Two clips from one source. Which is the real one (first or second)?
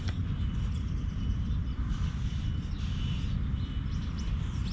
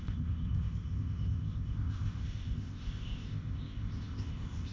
first